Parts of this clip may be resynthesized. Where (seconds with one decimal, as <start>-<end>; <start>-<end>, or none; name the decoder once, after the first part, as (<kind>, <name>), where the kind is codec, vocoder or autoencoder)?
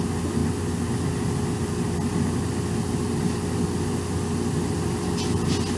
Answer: none